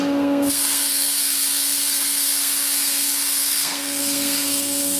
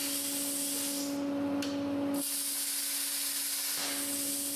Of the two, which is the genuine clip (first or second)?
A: second